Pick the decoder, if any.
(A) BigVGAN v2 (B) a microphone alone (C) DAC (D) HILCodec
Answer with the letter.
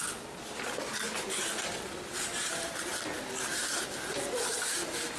B